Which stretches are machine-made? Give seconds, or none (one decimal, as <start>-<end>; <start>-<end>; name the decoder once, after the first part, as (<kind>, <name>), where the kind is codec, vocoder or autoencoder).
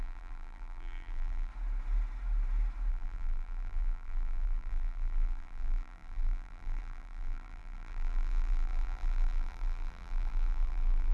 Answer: 0.0-1.5 (vocoder, BigVGAN v2); 2.9-11.1